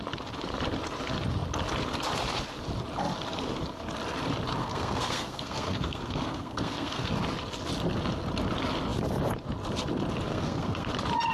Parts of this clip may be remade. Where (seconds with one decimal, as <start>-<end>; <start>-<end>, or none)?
4.6-7.1; 10.3-10.9